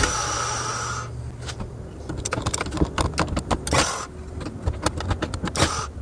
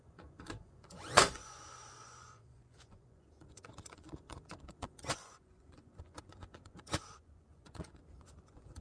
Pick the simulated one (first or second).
second